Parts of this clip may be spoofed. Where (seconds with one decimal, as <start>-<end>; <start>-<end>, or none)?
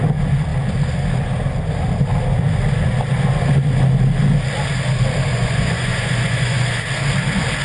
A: 5.3-6.8